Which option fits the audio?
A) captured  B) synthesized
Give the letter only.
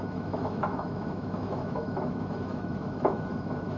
B